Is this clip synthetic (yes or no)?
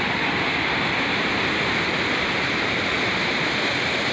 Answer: yes